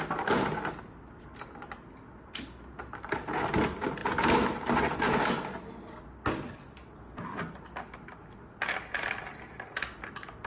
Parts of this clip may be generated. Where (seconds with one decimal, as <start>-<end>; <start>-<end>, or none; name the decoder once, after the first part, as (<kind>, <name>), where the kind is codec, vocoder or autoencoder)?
none